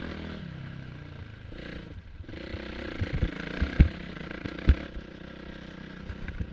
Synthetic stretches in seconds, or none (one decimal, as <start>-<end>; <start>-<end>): none